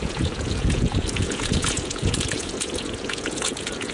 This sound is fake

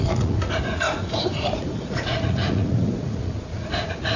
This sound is fake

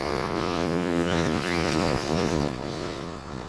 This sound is fake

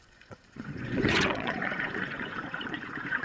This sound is fake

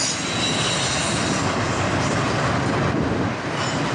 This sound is real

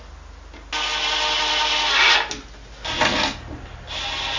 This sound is real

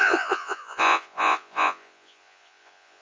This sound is fake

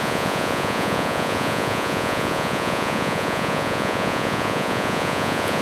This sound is fake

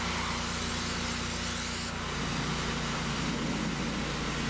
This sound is real